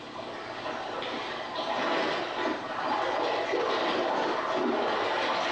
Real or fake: real